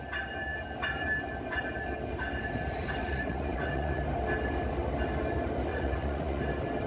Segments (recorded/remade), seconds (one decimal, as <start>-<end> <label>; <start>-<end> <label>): 0.0-3.0 recorded; 3.0-4.0 remade; 4.0-5.7 recorded; 5.7-6.4 remade; 6.4-6.9 recorded